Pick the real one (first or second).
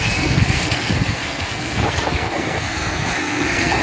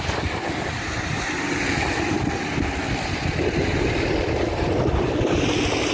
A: second